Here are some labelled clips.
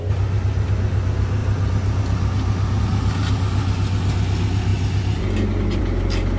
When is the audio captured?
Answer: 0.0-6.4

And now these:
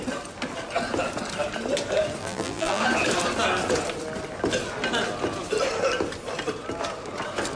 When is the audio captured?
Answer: 0.0-2.2; 2.8-7.6